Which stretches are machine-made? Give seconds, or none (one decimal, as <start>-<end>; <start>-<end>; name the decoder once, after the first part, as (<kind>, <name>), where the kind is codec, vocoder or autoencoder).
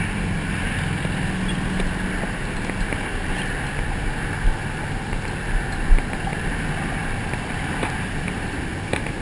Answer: none